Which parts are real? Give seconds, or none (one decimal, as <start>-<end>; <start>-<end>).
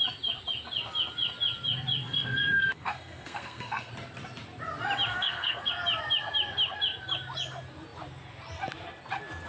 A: 0.0-2.0; 3.9-5.1; 5.7-9.5